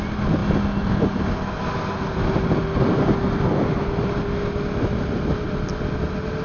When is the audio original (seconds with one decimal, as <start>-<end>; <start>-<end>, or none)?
0.0-6.4